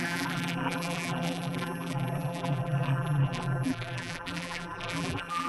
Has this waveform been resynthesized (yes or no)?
yes